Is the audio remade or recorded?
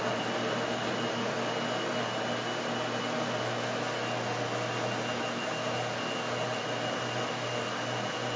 recorded